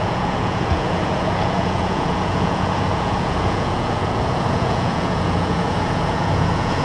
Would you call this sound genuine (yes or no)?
no